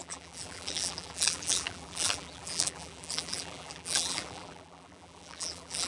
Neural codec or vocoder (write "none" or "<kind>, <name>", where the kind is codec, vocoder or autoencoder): vocoder, BigVGAN v2